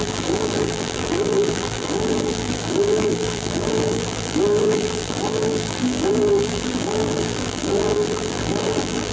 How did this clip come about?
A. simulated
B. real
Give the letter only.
A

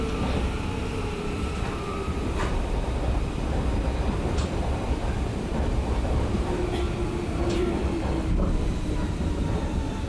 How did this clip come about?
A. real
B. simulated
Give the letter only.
B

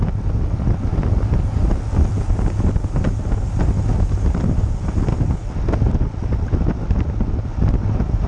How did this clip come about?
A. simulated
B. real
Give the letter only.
B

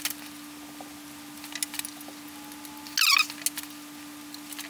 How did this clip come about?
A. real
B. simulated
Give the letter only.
A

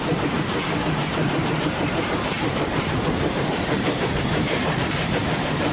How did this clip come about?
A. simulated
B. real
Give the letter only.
A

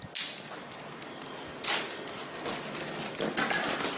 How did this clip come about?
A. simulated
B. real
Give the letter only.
B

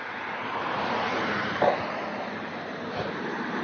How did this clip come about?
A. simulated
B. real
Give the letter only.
A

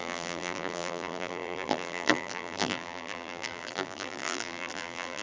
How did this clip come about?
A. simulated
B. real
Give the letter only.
A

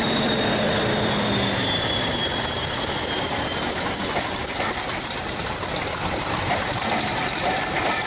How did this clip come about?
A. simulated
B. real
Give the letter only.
A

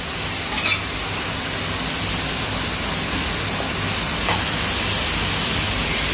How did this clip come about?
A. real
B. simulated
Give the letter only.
A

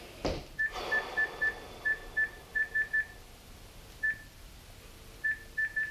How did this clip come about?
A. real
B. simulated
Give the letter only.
B